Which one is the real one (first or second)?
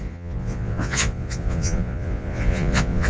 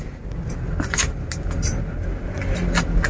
second